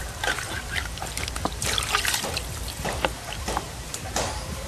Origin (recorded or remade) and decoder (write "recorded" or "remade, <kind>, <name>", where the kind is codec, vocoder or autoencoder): remade, vocoder, BigVGAN v2